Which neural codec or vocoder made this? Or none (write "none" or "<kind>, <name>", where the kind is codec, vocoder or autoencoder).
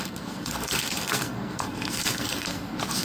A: codec, SNAC